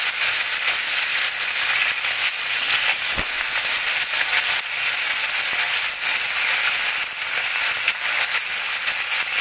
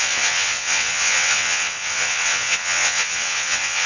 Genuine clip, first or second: first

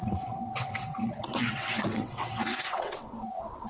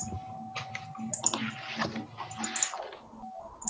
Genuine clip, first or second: second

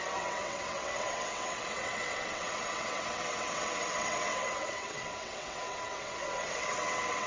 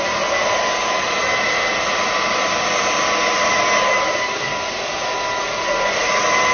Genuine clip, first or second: second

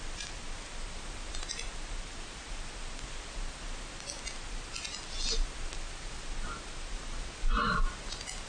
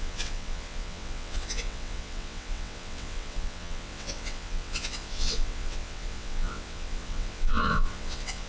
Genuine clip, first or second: first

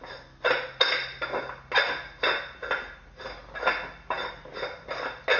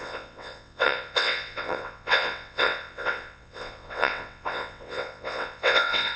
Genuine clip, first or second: first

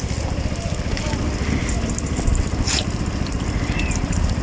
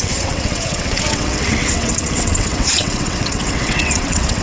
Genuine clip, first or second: first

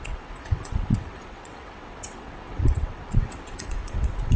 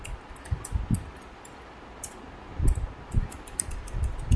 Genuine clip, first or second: second